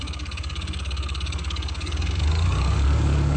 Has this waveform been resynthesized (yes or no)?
yes